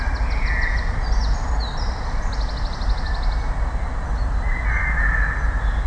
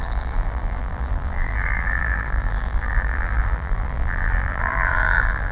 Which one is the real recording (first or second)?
first